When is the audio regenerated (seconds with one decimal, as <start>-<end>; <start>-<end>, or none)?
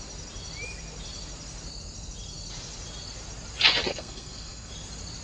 3.9-4.7